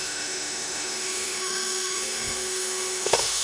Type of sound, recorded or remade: remade